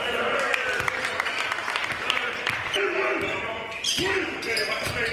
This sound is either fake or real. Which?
fake